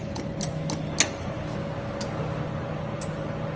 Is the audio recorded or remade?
recorded